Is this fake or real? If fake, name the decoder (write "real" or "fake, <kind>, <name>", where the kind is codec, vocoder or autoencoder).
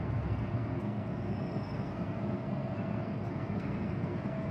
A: fake, codec, SNAC